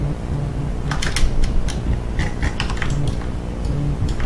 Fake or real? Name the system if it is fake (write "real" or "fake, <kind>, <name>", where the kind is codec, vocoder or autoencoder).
real